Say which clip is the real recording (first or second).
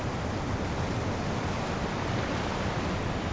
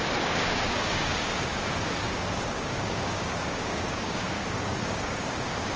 first